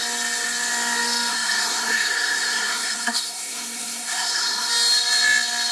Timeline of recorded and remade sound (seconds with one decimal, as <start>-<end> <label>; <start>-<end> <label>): 0.0-1.3 recorded; 1.3-4.7 remade; 4.7-5.7 recorded